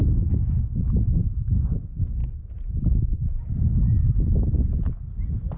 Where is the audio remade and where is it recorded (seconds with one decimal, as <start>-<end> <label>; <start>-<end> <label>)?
0.0-5.6 recorded